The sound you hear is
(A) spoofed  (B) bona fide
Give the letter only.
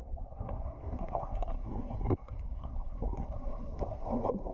A